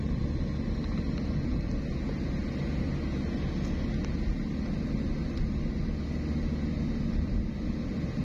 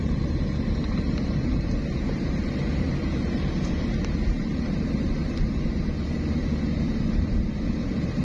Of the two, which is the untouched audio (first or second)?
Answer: first